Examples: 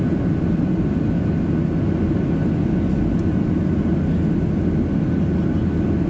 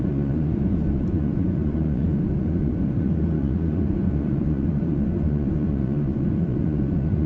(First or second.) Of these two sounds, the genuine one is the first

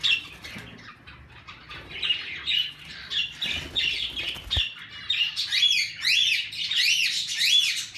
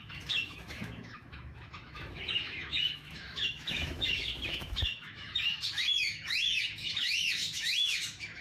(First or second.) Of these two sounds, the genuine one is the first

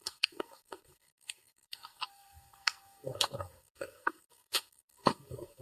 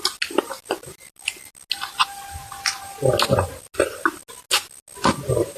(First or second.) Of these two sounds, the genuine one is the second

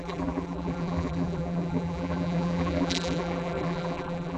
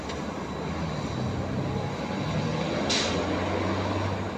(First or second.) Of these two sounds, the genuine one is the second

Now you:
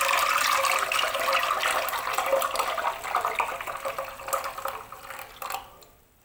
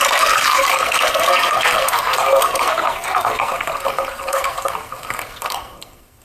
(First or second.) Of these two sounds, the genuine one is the first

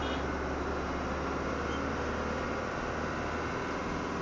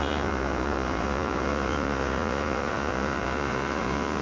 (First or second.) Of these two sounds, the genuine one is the first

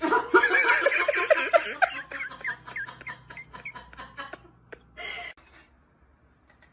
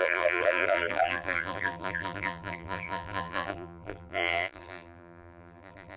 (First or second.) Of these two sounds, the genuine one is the first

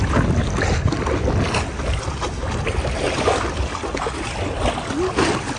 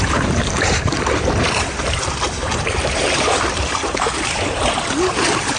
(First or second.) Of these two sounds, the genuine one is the first